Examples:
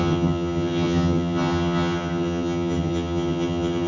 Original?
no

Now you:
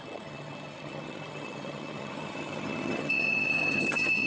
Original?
no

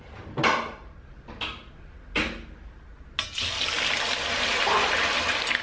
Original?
yes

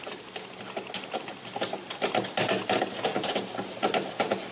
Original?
yes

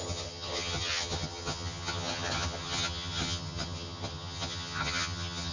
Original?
no